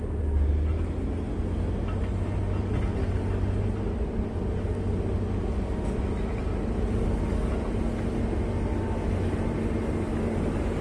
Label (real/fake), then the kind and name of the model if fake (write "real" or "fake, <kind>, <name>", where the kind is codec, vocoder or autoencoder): real